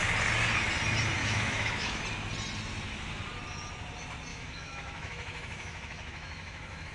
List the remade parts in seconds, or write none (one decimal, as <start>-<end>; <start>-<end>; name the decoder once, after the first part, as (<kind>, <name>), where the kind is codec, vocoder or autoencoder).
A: 1.2-2.0 (autoencoder, DAC-VAE); 4.3-6.9